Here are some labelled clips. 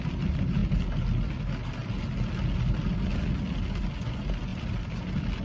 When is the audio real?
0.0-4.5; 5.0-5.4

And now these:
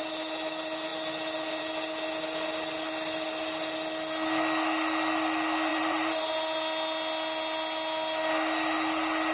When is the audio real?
0.0-5.7; 6.2-9.3